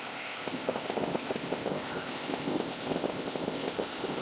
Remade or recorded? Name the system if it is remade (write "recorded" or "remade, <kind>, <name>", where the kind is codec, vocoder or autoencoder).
remade, codec, ZipCodec